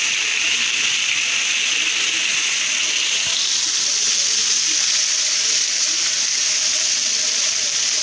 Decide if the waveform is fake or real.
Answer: real